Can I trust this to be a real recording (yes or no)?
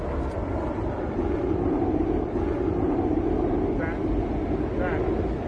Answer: yes